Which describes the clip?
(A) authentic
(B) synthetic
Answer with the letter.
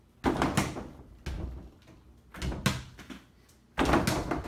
A